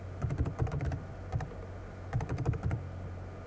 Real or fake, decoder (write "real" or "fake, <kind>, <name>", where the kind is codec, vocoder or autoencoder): real